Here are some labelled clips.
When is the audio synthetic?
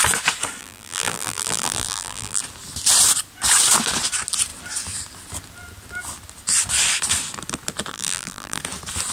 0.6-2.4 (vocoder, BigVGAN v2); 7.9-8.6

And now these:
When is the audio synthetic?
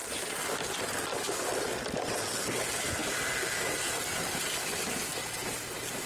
0.0-2.2 (vocoder, BigVGAN v2)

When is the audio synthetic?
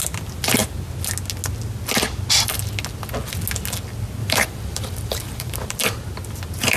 4.2-5.8 (vocoder, BigVGAN v2)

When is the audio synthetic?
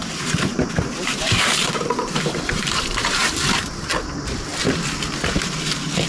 0.0-3.7 (vocoder, BigVGAN v2)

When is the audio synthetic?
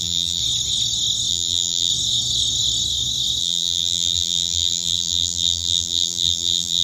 0.0-0.4 (vocoder, BigVGAN v2); 1.3-1.9; 3.4-6.8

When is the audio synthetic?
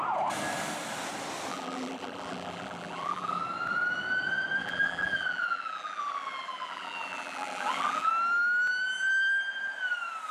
1.5-3.4 (vocoder, BigVGAN v2); 4.6-8.1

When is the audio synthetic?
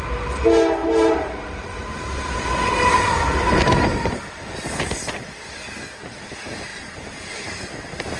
0.8-4.3 (vocoder, BigVGAN v2); 6.7-7.5